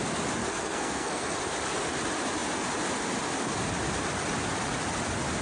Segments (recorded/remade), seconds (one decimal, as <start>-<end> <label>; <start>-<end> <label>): 0.0-0.4 recorded; 0.4-1.4 remade; 1.4-5.4 recorded